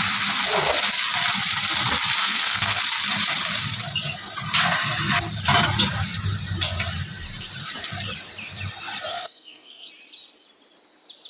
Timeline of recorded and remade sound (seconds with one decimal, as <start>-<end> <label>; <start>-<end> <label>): 0.0-2.2 recorded; 2.2-2.8 remade; 2.8-9.1 recorded; 9.1-9.9 remade; 9.9-11.3 recorded